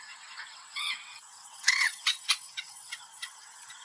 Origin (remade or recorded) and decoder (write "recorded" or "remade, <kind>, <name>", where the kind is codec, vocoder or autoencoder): remade, vocoder, WaveNeXt